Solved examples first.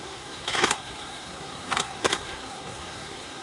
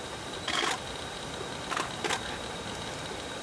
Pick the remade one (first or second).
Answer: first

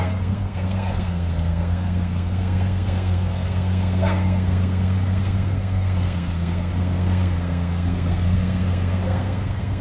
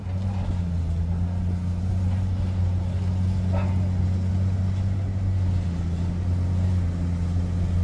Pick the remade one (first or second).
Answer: first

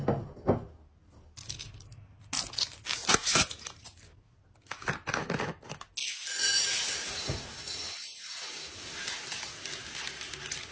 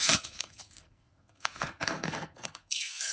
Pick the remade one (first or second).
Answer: second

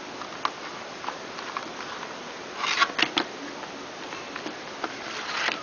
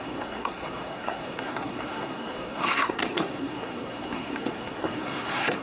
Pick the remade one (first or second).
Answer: second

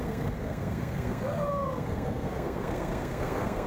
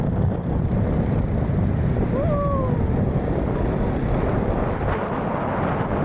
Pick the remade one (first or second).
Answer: first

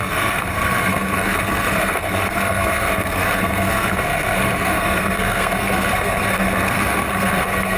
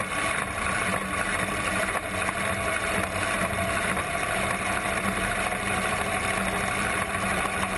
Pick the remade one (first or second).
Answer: first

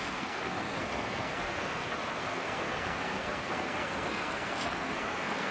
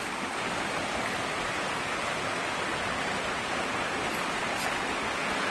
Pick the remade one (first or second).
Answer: first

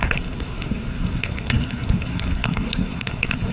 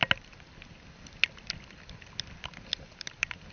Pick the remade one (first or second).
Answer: first